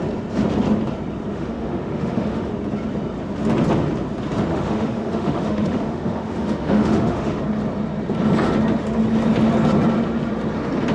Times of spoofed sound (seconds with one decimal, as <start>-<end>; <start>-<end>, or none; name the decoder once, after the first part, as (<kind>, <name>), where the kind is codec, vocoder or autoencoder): 1.3-2.5 (autoencoder, DAC-VAE); 4.5-7.4